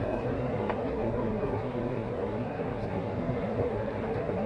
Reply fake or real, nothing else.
fake